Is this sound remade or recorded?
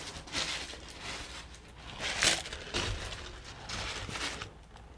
recorded